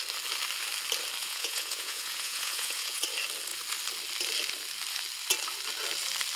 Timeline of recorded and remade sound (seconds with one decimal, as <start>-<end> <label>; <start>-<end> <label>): 0.0-1.2 recorded; 1.2-3.0 remade; 3.0-6.4 recorded